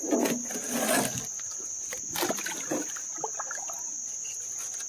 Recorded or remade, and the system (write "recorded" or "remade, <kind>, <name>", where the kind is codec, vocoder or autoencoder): recorded